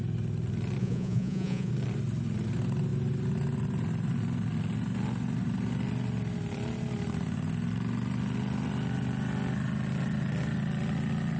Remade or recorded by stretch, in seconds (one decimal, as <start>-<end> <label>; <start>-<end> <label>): 0.0-0.8 recorded; 0.8-1.7 remade; 1.7-11.4 recorded